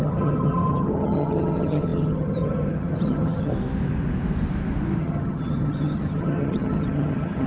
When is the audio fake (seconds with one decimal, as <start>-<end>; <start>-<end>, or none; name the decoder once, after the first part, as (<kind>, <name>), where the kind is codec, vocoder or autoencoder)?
0.0-3.5 (vocoder, HiFi-GAN); 5.0-7.5